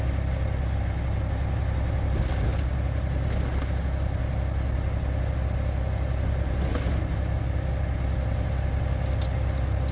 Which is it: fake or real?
real